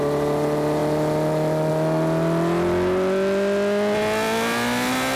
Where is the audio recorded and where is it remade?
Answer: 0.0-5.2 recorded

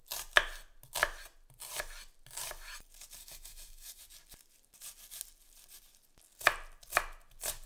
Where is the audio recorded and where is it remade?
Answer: 0.0-3.2 recorded; 3.2-4.0 remade; 4.0-7.7 recorded

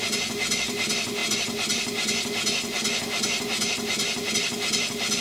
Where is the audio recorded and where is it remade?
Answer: 0.0-5.2 recorded

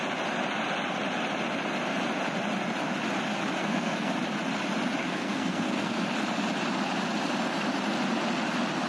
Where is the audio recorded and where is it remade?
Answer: 0.0-3.6 recorded; 3.6-4.1 remade; 4.1-5.0 recorded; 5.0-6.0 remade; 6.0-8.9 recorded